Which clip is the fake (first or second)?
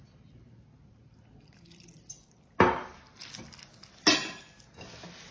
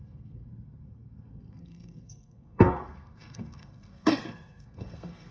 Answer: second